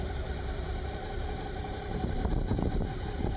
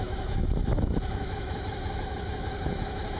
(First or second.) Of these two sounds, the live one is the first